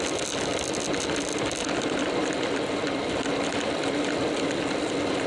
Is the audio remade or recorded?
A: recorded